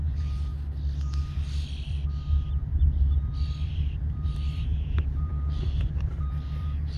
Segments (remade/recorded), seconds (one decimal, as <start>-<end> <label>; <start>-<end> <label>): 0.0-0.5 remade; 0.5-4.1 recorded; 4.1-7.0 remade